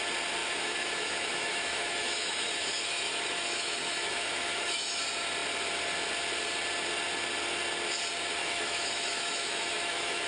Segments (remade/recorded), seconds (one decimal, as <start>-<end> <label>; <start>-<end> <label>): 0.0-0.4 recorded; 0.4-5.0 remade; 5.0-8.4 recorded; 8.4-10.3 remade